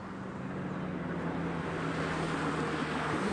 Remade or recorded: recorded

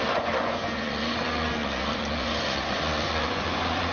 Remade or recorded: remade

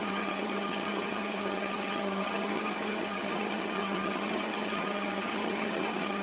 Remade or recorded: remade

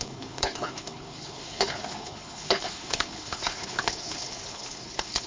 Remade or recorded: remade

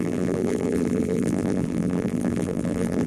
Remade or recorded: remade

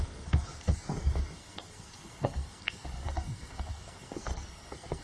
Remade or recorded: remade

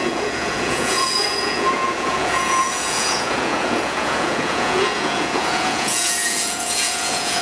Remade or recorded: remade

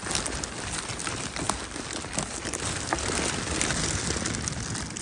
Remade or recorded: recorded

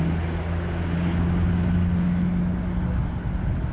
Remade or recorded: recorded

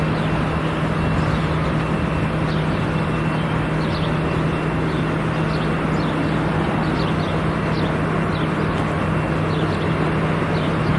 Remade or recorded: recorded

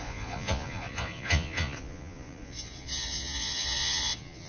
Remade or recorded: remade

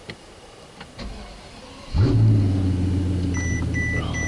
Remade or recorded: recorded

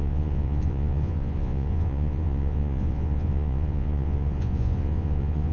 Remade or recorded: remade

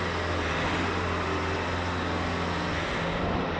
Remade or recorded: recorded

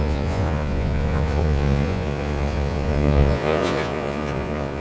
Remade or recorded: remade